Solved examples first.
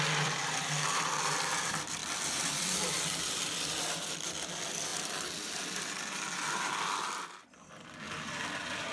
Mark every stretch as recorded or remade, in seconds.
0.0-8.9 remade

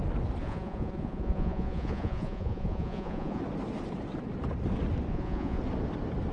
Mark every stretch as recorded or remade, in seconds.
0.0-0.4 recorded; 0.4-3.4 remade; 3.4-5.1 recorded; 5.1-5.6 remade; 5.6-6.3 recorded

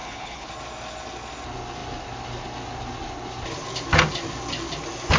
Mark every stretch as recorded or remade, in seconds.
0.0-0.5 remade; 0.5-5.2 recorded

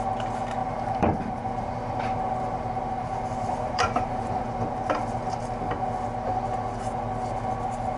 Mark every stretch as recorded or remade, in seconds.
0.0-0.6 recorded; 0.6-5.4 remade; 5.4-8.0 recorded

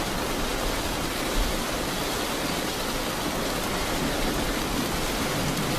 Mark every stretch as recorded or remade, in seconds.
0.0-5.8 recorded

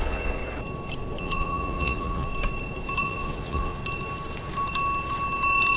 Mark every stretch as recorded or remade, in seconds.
0.0-0.4 remade; 0.4-1.2 recorded; 1.2-2.3 remade; 2.3-3.0 recorded; 3.0-3.8 remade; 3.8-5.8 recorded

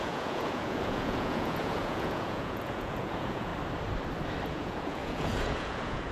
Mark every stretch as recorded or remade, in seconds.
0.0-3.5 remade; 3.5-4.5 recorded; 4.5-6.1 remade